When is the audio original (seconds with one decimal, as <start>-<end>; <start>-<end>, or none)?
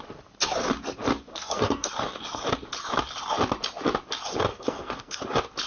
0.0-1.3; 1.9-4.5; 5.2-5.7